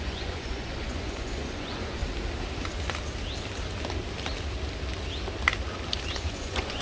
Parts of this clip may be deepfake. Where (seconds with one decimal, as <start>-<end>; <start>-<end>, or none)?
0.0-2.0; 6.1-6.8